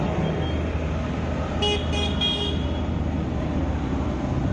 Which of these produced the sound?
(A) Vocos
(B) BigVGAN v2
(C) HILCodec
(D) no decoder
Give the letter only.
D